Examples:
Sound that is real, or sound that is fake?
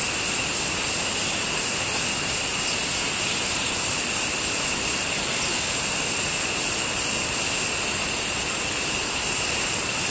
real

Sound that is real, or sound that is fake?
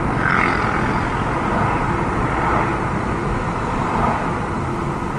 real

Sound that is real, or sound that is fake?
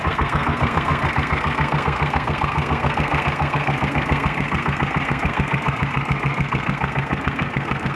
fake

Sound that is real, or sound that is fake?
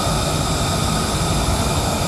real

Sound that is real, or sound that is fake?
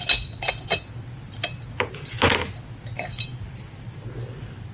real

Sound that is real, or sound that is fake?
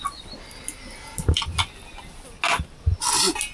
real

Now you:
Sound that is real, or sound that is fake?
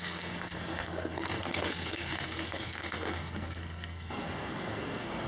fake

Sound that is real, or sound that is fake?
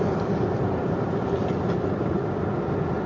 real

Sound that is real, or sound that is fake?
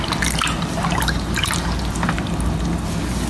real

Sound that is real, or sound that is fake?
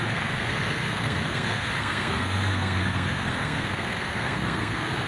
fake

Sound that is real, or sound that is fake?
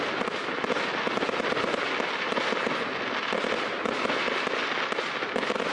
real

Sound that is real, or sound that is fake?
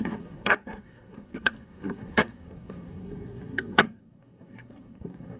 fake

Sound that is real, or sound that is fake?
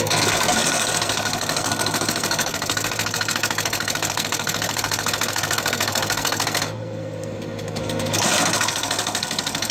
fake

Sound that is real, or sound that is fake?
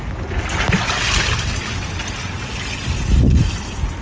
real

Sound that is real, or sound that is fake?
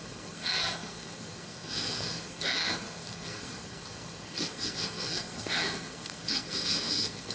fake